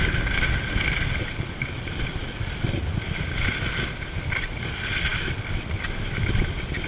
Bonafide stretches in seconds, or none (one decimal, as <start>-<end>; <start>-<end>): 0.0-6.9